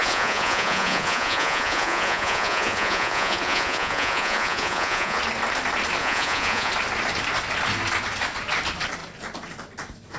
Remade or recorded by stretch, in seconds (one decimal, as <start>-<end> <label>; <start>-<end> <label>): 0.0-5.2 remade; 5.2-6.0 recorded; 6.0-6.7 remade; 6.7-10.2 recorded

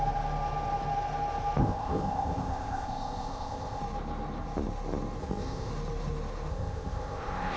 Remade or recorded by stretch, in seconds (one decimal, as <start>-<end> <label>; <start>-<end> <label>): 0.0-1.6 recorded; 1.6-3.8 remade; 3.8-5.2 recorded; 5.2-5.7 remade; 5.7-6.5 recorded; 6.5-7.6 remade

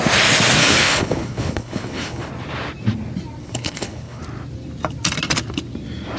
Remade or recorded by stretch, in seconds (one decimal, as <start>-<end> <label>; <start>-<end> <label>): 0.0-0.6 recorded; 0.6-2.3 remade; 2.3-3.4 recorded; 3.4-4.2 remade; 4.2-6.2 recorded

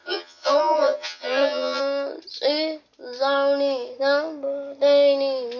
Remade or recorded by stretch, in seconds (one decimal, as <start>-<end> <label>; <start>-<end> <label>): 0.0-1.8 remade; 1.8-5.6 recorded

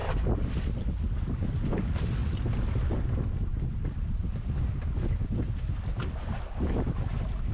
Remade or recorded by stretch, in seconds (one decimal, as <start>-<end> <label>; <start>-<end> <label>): 0.0-7.5 recorded

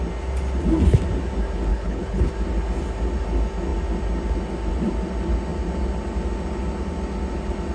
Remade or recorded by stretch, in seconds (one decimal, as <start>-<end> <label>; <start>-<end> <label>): 0.0-1.7 recorded; 1.7-2.3 remade; 2.3-7.7 recorded

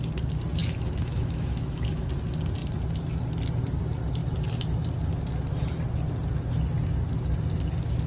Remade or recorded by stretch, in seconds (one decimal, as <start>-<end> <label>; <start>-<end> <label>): 0.0-0.6 recorded; 0.6-2.1 remade; 2.1-8.1 recorded

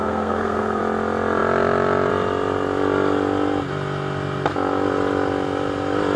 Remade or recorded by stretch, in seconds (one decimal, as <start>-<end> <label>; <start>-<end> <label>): 0.0-0.8 remade; 0.8-6.2 recorded